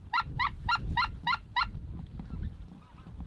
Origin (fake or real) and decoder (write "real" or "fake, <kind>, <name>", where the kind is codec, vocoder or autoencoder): real